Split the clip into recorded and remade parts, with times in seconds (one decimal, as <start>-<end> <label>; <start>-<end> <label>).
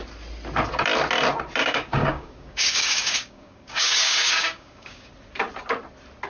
0.0-1.6 recorded; 1.6-5.1 remade; 5.1-6.3 recorded